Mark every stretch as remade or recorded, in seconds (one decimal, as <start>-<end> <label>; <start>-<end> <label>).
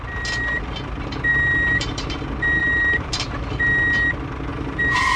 0.0-1.3 recorded; 1.3-2.2 remade; 2.2-2.6 recorded; 2.6-3.3 remade; 3.3-4.5 recorded; 4.5-5.2 remade